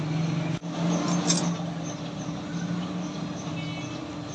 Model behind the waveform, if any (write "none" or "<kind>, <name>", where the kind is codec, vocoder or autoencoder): none